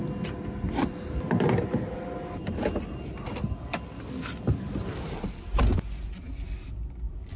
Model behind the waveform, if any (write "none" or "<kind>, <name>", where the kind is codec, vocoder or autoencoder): none